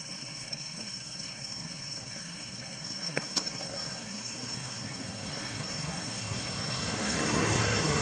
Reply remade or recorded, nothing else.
remade